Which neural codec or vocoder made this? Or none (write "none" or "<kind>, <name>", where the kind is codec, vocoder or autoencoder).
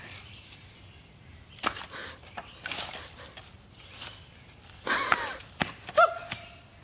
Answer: none